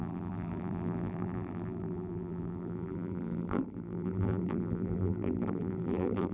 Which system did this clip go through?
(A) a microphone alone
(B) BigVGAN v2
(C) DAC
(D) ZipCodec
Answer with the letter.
B